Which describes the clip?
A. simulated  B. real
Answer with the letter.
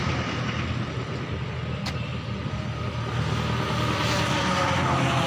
B